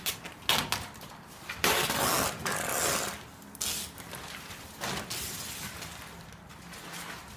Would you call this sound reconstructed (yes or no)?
no